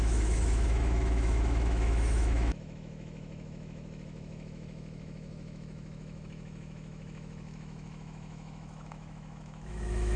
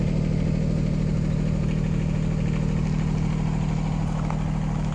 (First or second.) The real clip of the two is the second